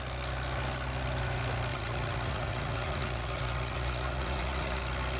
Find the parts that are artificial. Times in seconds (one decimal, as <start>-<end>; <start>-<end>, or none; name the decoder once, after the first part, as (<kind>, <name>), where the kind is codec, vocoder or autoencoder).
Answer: 1.7-4.8 (vocoder, Vocos)